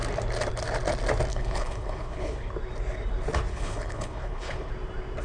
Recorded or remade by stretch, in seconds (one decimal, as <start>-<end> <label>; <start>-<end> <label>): 0.0-1.3 recorded; 1.3-2.5 remade; 2.5-3.5 recorded; 3.5-4.7 remade; 4.7-5.2 recorded